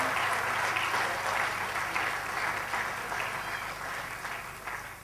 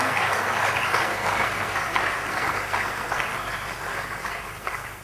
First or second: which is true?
first